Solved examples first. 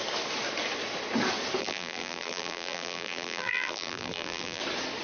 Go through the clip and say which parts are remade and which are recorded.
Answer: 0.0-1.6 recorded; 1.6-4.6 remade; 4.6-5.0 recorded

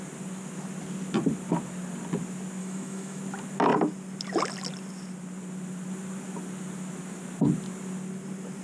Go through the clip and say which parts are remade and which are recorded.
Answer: 0.0-2.6 recorded; 2.6-3.2 remade; 3.2-8.6 recorded

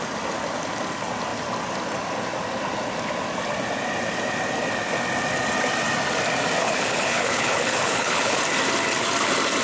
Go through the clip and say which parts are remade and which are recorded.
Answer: 0.0-6.6 recorded; 6.6-8.4 remade; 8.4-9.6 recorded

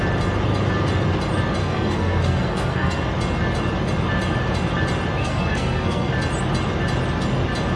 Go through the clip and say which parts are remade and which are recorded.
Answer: 0.0-1.6 recorded; 1.6-3.0 remade; 3.0-5.2 recorded; 5.2-6.1 remade; 6.1-7.8 recorded

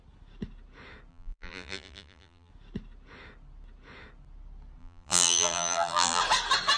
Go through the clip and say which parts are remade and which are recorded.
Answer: 0.0-1.1 recorded; 1.1-2.5 remade; 2.5-4.8 recorded; 4.8-6.2 remade; 6.2-6.8 recorded

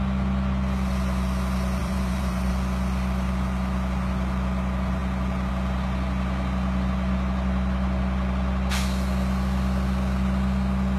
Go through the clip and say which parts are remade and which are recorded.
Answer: 0.0-1.8 recorded; 1.8-2.5 remade; 2.5-11.0 recorded

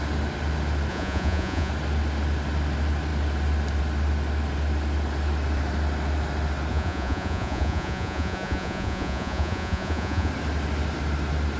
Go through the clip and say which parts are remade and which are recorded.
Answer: 0.0-0.9 recorded; 0.9-1.7 remade; 1.7-6.7 recorded; 6.7-10.3 remade; 10.3-11.6 recorded